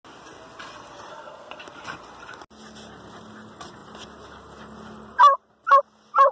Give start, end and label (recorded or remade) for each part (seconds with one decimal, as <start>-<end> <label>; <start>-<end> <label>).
0.0-1.1 recorded; 1.1-1.6 remade; 1.6-6.3 recorded